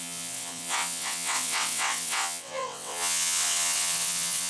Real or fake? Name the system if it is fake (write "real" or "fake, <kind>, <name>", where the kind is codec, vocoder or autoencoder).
fake, vocoder, WaveNeXt